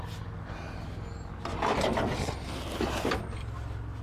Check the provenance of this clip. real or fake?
real